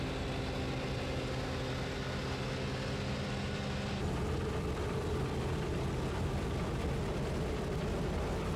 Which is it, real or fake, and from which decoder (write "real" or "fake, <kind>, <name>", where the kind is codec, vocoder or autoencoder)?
real